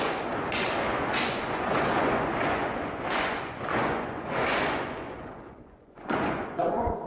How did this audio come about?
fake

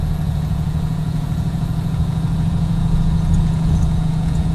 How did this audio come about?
fake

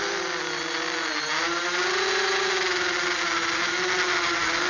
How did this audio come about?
real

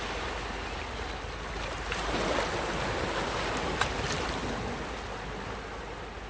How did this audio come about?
real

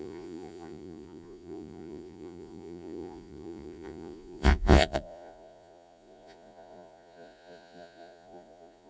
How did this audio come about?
fake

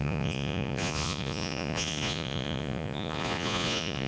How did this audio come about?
fake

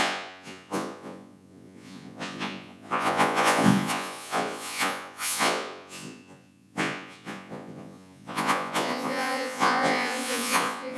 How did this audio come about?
fake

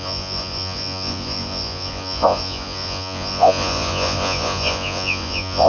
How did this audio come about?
fake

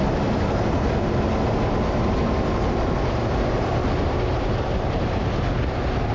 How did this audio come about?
real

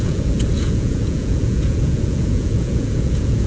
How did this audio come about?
fake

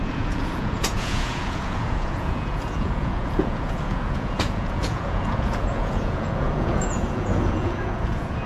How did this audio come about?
fake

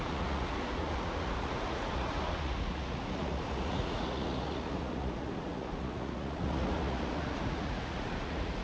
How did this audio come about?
fake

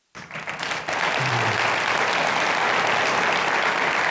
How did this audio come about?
real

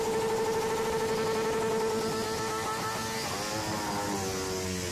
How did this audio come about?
real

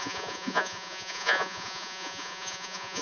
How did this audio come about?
fake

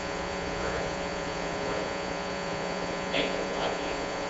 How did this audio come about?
fake